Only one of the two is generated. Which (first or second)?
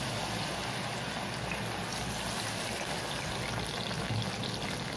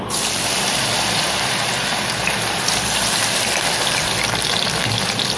second